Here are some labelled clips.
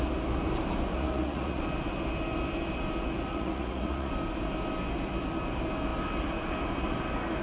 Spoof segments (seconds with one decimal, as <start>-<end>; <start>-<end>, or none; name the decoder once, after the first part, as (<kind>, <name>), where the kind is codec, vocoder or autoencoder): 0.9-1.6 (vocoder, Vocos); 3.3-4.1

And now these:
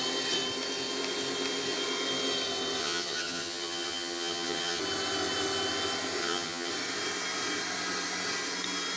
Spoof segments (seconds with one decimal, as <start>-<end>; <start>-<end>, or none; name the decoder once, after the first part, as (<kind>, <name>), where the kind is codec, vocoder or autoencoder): 2.8-4.8 (vocoder, HiFi-GAN); 6.2-6.7

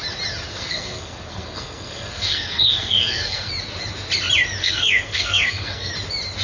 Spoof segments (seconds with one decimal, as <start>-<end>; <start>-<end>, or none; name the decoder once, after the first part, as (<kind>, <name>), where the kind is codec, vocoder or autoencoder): 0.5-3.5 (codec, SNAC); 4.6-5.9